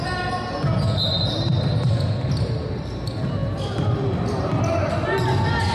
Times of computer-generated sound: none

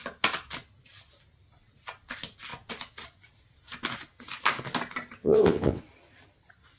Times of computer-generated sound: 5.2-5.8 (vocoder, WaveNeXt)